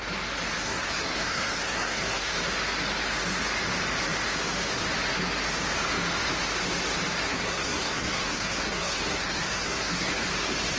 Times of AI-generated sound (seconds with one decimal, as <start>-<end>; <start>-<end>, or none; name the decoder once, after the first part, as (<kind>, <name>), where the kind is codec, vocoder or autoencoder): 0.6-2.3 (codec, SNAC); 7.3-10.2